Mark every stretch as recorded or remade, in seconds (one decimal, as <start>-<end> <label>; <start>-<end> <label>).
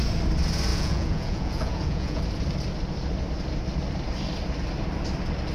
0.0-0.7 recorded; 0.7-2.2 remade; 2.2-5.5 recorded